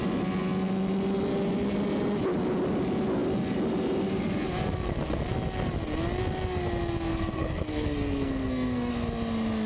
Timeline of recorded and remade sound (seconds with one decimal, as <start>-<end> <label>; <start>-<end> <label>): 0.0-7.1 recorded; 7.1-8.9 remade; 8.9-9.7 recorded